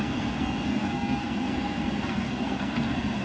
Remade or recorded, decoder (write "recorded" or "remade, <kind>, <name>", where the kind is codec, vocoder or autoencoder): remade, codec, SNAC